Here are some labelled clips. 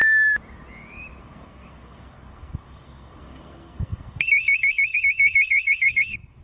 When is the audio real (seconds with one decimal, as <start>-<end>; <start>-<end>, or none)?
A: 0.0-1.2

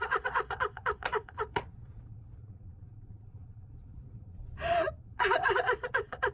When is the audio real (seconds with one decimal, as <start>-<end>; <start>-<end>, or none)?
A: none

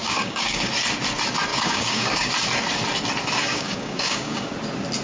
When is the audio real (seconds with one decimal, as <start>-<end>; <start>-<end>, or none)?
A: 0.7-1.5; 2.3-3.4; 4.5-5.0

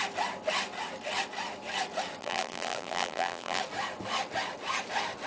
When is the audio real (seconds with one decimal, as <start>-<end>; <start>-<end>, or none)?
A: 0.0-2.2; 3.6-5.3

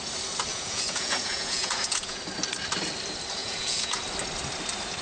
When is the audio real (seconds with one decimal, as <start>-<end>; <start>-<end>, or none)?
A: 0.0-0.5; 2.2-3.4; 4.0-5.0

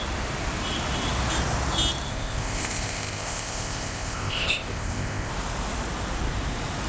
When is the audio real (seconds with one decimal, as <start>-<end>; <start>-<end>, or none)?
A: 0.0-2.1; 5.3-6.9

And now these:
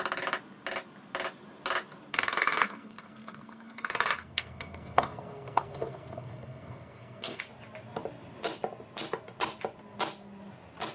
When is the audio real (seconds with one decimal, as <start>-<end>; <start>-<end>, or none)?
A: 0.0-2.1; 7.4-10.9

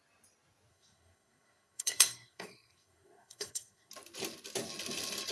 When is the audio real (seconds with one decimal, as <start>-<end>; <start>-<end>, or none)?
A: 0.0-0.7; 3.9-5.3